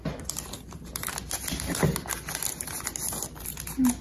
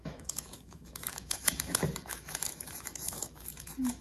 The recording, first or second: first